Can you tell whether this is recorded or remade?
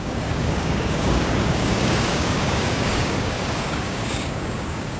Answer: remade